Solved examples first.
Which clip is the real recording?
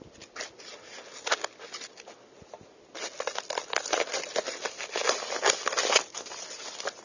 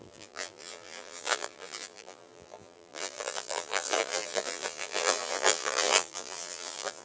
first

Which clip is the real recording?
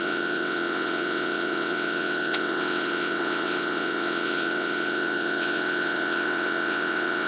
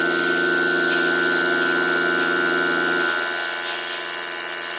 second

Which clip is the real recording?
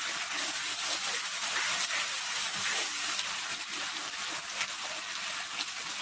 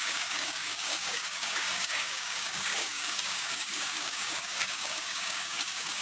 first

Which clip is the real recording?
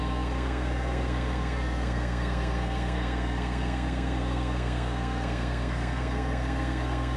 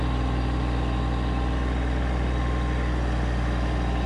second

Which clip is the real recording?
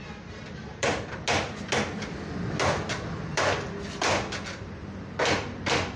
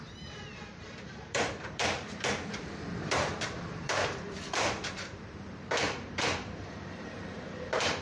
first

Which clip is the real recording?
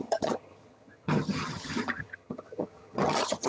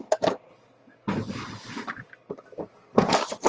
second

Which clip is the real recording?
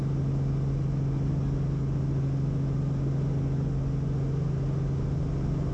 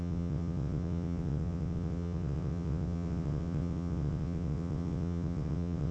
first